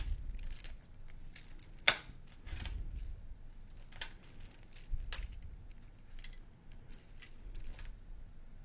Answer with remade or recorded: recorded